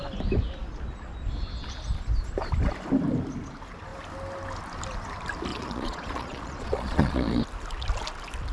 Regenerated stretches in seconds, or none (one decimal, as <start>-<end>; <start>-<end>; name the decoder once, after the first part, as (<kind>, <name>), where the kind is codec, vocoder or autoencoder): 5.5-7.4 (vocoder, Vocos)